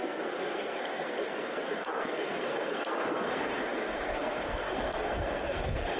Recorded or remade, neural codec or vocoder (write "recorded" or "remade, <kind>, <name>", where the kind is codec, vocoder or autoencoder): remade, codec, SNAC